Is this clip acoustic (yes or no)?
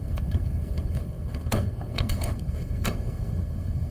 no